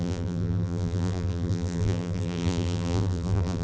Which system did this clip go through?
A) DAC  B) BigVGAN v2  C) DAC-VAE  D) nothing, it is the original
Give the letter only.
B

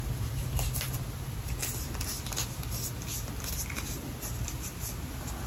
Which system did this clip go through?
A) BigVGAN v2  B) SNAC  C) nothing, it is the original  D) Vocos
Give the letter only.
C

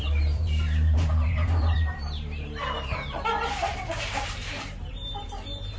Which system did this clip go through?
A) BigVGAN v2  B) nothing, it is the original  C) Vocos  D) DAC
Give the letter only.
A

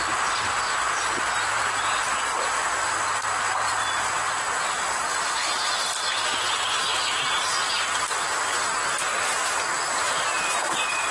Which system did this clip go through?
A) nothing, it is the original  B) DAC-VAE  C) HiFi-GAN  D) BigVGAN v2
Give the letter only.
D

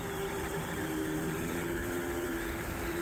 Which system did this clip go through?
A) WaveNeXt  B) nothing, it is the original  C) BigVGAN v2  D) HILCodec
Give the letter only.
C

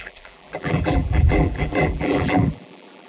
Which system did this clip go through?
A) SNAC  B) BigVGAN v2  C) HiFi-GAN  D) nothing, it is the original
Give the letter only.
B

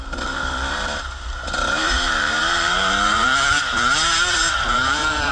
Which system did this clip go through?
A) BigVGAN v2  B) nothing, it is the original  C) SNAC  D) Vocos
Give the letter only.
A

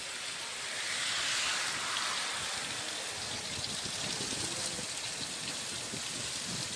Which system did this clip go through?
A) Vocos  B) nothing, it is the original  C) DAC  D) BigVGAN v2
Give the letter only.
B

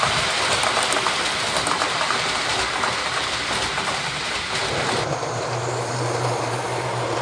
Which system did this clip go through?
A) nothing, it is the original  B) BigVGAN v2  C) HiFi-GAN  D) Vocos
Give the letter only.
A